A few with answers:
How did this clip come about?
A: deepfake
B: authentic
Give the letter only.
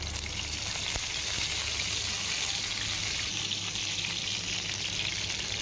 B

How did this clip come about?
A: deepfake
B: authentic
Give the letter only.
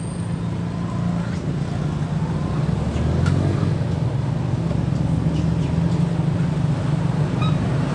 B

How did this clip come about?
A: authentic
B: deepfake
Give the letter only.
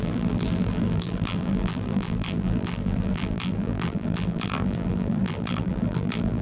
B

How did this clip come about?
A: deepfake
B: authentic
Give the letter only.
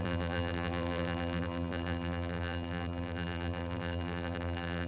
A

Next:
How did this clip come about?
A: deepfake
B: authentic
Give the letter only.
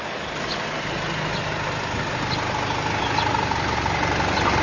B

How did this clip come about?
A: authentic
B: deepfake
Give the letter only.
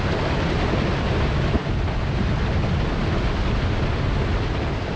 A